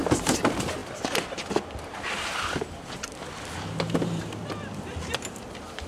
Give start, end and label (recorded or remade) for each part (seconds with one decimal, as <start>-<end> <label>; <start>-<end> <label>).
0.0-5.9 recorded